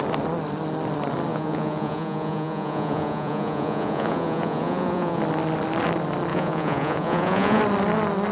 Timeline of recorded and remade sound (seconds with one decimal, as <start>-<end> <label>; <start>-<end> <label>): 0.0-1.3 recorded; 1.3-5.2 remade; 5.2-6.3 recorded; 6.3-7.6 remade; 7.6-8.3 recorded